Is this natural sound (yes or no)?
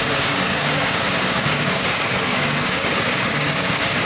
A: no